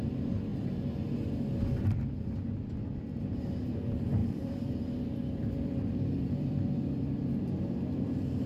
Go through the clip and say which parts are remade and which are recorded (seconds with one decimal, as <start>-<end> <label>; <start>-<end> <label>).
0.0-4.2 recorded; 4.2-7.6 remade; 7.6-8.5 recorded